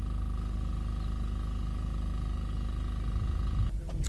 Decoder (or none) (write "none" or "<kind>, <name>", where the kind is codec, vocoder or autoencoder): none